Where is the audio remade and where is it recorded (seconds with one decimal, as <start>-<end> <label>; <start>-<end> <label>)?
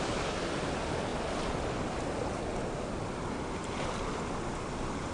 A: 0.0-5.1 recorded